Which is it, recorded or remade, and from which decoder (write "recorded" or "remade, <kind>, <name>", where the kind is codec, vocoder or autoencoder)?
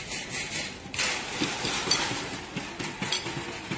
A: recorded